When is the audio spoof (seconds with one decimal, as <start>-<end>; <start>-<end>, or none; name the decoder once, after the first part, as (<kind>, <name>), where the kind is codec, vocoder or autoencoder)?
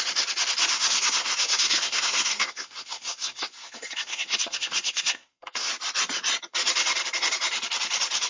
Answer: 0.7-5.7 (codec, SNAC)